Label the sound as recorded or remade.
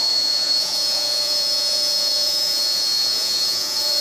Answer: remade